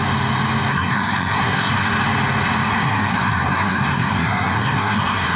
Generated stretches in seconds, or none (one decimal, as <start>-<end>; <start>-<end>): 0.7-1.7; 2.7-5.4